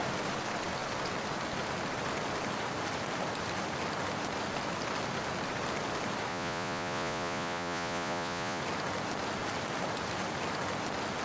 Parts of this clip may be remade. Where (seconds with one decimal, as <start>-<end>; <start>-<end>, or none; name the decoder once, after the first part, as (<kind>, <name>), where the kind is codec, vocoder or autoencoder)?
6.3-8.6 (vocoder, Vocos)